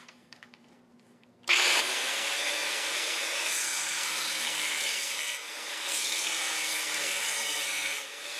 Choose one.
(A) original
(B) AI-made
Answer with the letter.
B